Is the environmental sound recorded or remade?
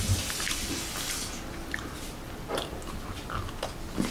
recorded